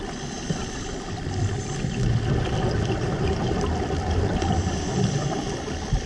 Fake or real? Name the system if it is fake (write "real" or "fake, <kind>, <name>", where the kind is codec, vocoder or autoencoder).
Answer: real